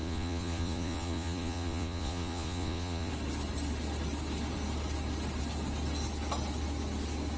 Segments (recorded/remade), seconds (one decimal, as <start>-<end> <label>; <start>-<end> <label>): 0.0-3.1 remade; 3.1-7.4 recorded